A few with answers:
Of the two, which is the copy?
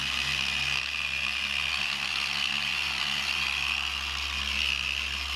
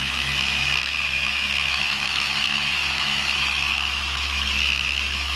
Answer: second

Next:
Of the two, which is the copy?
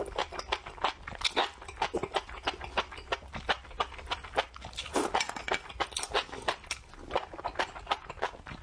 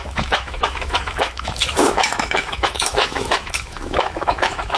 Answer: second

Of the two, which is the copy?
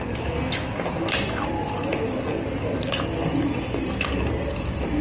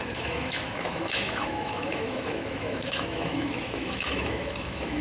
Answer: second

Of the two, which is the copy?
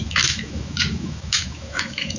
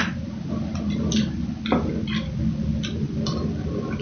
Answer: first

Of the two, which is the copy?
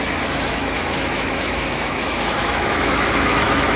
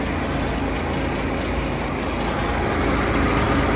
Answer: first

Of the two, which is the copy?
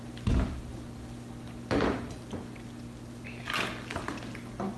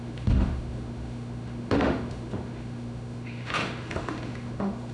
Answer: second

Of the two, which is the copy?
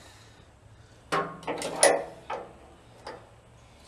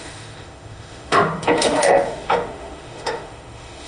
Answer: second